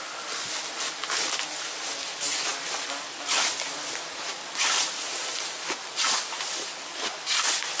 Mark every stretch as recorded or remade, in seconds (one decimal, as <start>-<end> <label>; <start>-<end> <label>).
0.0-7.8 recorded